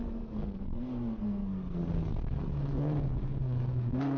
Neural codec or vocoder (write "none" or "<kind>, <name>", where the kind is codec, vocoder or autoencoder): codec, SNAC